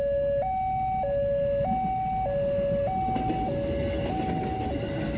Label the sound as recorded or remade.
recorded